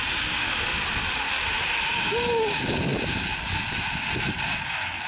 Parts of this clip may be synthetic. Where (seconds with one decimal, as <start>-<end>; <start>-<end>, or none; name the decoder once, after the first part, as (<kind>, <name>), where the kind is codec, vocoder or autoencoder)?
none